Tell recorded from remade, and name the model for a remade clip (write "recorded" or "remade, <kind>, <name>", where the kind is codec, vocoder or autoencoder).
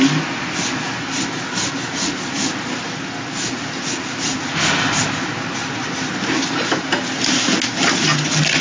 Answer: recorded